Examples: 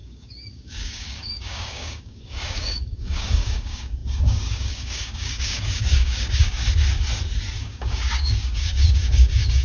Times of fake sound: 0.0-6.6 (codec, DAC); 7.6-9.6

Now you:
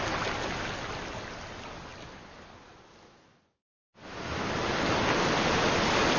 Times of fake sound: none

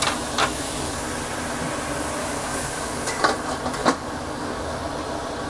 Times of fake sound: 0.4-1.1 (codec, DAC); 2.2-3.2; 3.8-4.8

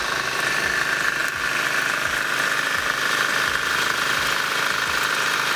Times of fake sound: none